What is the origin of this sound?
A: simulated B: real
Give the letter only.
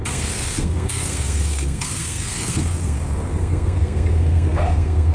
A